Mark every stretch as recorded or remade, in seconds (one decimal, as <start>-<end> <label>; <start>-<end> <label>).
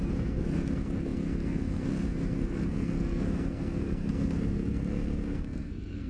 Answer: 0.0-6.1 remade